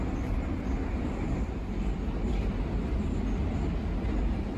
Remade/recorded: recorded